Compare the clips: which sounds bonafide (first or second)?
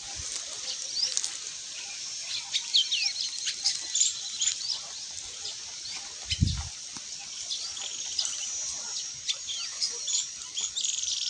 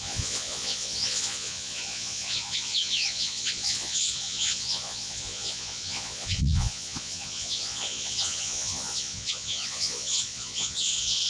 first